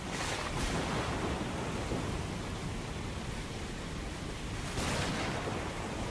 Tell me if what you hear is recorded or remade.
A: recorded